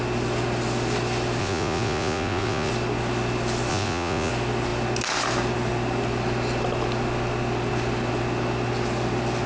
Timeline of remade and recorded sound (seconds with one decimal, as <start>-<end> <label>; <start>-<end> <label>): 0.0-1.4 recorded; 1.4-2.7 remade; 2.7-3.7 recorded; 3.7-4.3 remade; 4.3-9.5 recorded